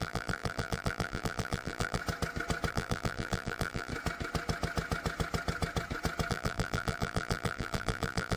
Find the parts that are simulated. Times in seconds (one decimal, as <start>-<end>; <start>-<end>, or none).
0.0-2.0; 2.7-3.9; 6.3-8.4